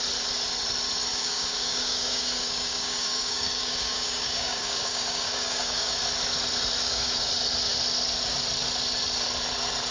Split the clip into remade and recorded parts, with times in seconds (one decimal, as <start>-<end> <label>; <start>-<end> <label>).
0.0-1.1 recorded; 1.1-6.0 remade; 6.0-6.8 recorded; 6.8-7.3 remade; 7.3-9.9 recorded